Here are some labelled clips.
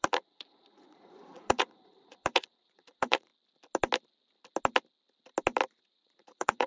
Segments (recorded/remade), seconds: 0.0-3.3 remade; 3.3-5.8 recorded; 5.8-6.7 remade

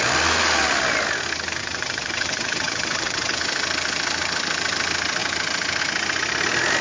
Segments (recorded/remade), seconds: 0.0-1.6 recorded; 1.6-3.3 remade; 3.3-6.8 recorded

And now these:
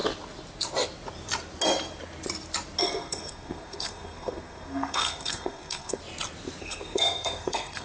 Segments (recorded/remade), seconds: 0.0-2.8 recorded; 2.8-6.0 remade; 6.0-6.6 recorded; 6.6-7.8 remade